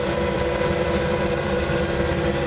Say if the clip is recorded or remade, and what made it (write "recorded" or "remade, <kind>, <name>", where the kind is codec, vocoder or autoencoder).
remade, vocoder, BigVGAN v2